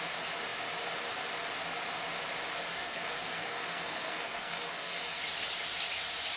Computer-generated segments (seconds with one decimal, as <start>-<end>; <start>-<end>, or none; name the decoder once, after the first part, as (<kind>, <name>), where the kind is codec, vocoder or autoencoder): 2.7-5.2 (codec, SNAC)